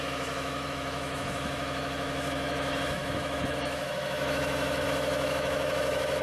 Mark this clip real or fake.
fake